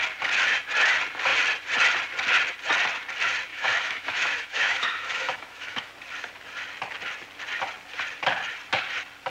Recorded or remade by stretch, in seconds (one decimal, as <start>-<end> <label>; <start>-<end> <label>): 0.0-3.5 recorded; 3.5-5.9 remade; 5.9-9.3 recorded